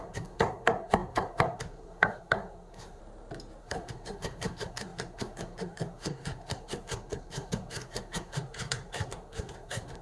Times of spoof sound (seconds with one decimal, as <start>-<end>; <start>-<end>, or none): 0.0-3.0; 3.6-10.0